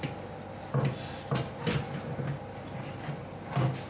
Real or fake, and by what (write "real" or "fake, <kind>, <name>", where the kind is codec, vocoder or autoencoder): real